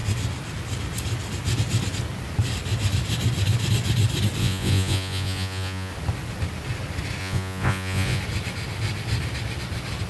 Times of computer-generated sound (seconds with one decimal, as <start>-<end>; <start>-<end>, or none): 4.4-5.9; 7.2-8.2